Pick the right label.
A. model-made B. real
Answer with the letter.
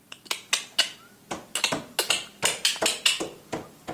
B